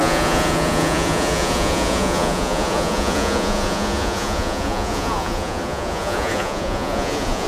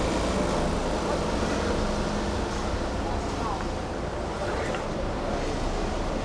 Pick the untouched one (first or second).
second